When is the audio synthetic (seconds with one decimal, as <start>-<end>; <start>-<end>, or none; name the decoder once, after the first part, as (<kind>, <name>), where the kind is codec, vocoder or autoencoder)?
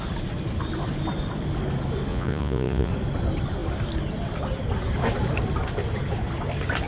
2.1-2.9 (vocoder, Vocos)